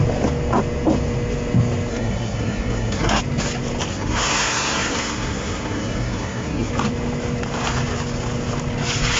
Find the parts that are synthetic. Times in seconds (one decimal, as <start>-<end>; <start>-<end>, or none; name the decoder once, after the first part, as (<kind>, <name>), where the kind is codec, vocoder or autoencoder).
1.9-3.2 (codec, SNAC); 3.9-6.7